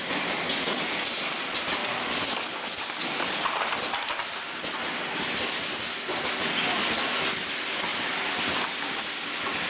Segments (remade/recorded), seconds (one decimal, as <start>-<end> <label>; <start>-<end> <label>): 0.0-1.8 recorded; 1.8-3.3 remade; 3.3-9.7 recorded